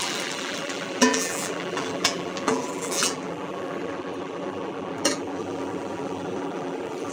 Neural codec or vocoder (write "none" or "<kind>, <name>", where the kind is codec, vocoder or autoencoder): vocoder, BigVGAN v2